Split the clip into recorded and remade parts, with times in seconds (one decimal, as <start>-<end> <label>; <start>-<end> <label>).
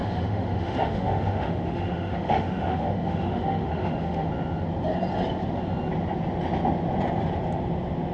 0.0-4.3 remade; 4.3-8.1 recorded